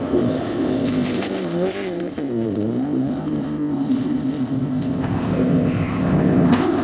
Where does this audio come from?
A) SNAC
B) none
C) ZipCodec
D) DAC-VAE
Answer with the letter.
C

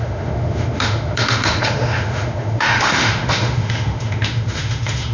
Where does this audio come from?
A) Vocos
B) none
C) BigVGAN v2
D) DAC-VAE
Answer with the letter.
D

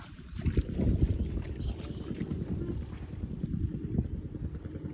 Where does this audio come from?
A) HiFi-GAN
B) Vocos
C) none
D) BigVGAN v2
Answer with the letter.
C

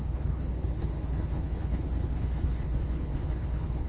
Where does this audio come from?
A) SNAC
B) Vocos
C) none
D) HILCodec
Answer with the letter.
D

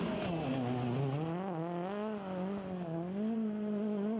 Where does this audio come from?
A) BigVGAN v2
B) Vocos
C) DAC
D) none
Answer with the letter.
D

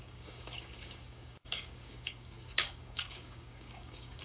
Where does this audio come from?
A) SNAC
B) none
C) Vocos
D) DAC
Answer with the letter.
D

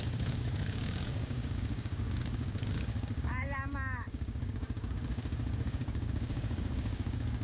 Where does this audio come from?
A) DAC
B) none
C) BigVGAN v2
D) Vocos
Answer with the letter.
A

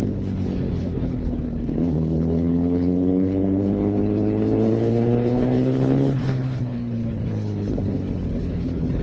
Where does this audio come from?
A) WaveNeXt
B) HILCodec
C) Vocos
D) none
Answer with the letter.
B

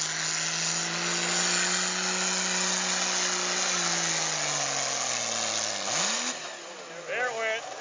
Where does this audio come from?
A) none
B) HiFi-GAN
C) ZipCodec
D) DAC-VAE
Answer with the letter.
A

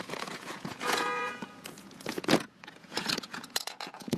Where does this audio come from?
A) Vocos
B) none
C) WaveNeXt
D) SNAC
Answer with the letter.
A